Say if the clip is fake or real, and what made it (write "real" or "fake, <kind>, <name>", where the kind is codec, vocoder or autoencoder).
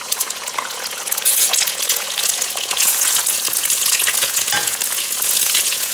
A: fake, vocoder, Vocos